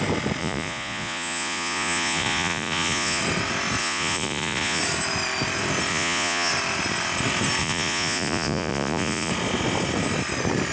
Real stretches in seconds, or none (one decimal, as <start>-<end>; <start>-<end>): 0.0-0.4; 3.2-3.8; 4.8-5.9; 6.5-7.6; 9.3-10.7